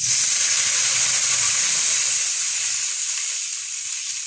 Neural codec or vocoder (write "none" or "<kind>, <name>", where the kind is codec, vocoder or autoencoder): none